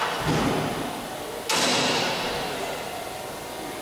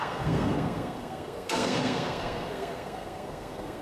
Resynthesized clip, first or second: second